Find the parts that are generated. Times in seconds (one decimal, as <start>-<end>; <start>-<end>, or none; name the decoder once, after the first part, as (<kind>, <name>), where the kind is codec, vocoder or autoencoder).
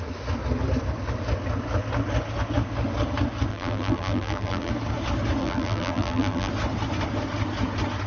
3.5-4.7 (vocoder, BigVGAN v2); 5.4-6.5